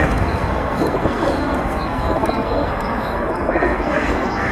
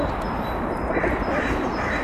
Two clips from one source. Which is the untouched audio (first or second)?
second